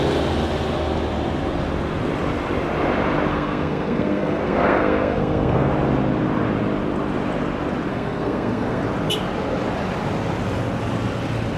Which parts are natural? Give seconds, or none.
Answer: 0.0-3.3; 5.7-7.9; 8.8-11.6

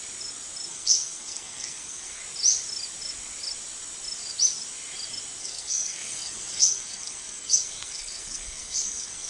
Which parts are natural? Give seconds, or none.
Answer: 0.0-0.7; 2.2-5.4

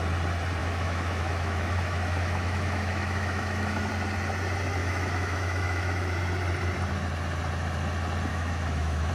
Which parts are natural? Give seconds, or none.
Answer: 0.0-0.6; 3.9-4.8; 6.2-8.3

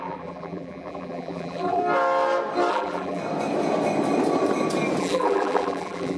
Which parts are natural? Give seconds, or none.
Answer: 1.8-2.7; 3.2-5.0

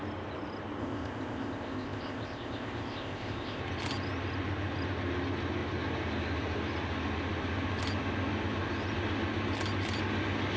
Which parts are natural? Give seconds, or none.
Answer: 0.0-0.8; 3.6-10.6